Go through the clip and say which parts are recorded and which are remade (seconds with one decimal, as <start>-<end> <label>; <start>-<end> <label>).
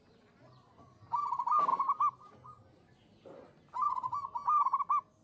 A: 0.0-5.2 recorded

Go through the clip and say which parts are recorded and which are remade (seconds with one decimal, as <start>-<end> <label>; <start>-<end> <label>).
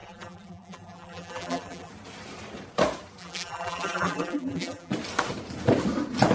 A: 0.0-1.9 remade; 1.9-3.2 recorded; 3.2-4.9 remade; 4.9-6.3 recorded